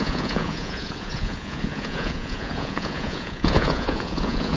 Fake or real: fake